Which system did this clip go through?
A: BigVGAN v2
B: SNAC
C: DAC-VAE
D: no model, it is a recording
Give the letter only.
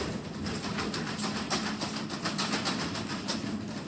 D